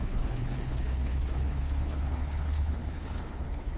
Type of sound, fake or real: fake